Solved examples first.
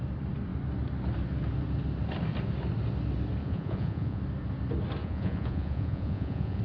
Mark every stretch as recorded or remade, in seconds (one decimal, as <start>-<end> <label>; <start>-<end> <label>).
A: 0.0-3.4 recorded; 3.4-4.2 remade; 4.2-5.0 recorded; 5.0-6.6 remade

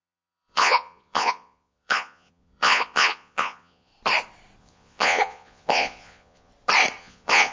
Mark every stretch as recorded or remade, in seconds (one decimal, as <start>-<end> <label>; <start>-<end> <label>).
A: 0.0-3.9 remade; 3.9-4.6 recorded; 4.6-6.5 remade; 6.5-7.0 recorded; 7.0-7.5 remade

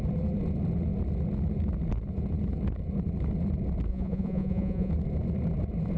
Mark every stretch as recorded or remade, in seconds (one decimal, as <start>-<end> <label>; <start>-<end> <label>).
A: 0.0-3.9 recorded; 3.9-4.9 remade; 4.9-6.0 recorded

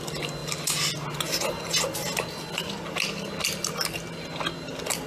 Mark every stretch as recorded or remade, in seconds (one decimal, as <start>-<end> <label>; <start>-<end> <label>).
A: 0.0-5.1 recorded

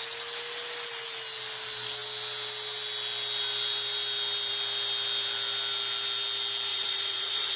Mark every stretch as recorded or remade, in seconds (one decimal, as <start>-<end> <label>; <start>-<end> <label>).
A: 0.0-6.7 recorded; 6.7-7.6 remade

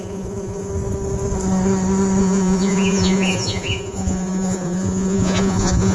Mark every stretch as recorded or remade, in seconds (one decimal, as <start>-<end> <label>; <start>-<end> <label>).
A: 0.0-0.7 remade; 0.7-2.2 recorded; 2.2-5.9 remade

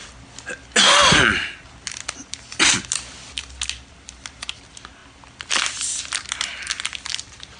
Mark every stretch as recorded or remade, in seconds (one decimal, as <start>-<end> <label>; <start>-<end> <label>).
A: 0.0-7.6 recorded